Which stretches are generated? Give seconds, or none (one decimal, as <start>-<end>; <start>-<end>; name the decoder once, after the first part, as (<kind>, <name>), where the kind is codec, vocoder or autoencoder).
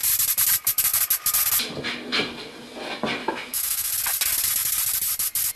3.2-3.9 (autoencoder, DAC-VAE)